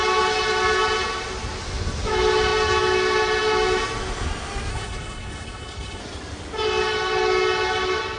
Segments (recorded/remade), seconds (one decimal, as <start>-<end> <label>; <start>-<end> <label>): 0.0-4.7 recorded; 4.7-6.0 remade; 6.0-8.2 recorded